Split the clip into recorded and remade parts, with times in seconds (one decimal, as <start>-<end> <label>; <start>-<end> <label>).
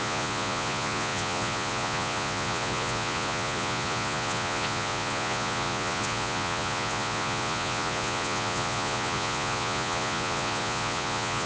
0.0-11.5 remade